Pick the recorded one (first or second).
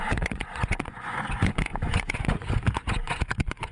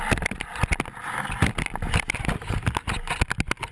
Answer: second